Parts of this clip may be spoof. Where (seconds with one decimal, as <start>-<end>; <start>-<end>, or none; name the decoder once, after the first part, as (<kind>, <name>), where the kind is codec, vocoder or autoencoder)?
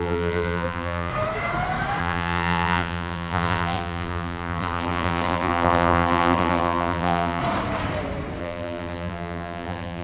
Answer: 0.0-1.1 (vocoder, BigVGAN v2); 2.0-7.4; 8.4-10.0